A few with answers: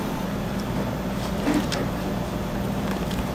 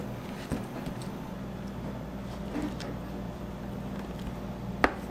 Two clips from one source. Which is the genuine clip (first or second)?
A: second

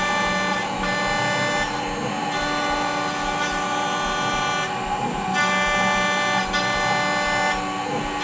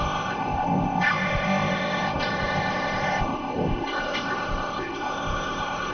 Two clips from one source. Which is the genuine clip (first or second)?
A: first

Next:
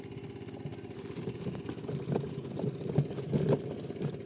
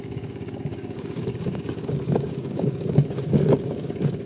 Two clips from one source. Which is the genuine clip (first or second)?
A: first